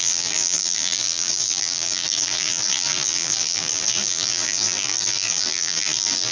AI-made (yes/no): yes